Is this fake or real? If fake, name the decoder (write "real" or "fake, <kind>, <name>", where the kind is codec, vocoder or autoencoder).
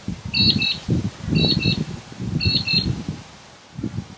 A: real